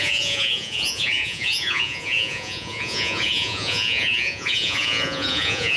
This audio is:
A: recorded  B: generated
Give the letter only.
B